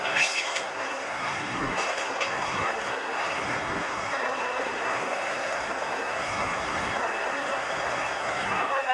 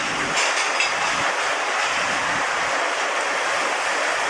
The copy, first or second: first